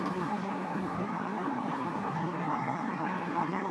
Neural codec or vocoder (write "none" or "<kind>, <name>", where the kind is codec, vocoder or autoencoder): codec, SNAC